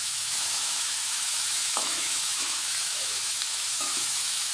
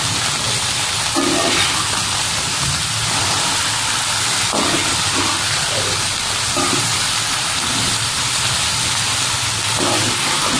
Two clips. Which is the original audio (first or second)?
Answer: second